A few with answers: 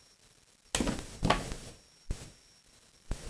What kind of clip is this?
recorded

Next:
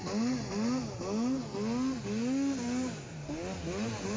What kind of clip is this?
recorded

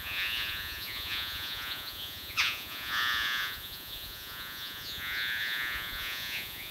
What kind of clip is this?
remade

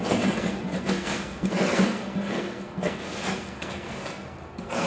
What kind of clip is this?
remade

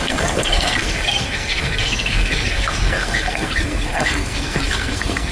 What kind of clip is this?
remade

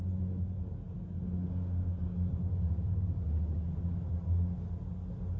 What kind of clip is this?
recorded